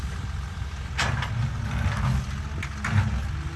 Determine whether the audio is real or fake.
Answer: real